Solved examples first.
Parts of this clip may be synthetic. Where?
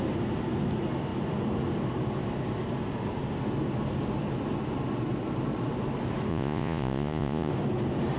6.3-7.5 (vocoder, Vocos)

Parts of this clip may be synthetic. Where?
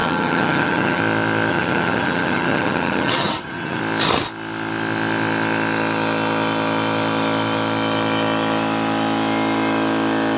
0.0-1.0 (vocoder, HiFi-GAN); 1.5-3.8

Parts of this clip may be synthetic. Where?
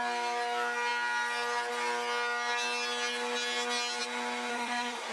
4.5-5.1 (codec, SNAC)